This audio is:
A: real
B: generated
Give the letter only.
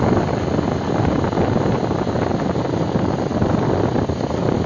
A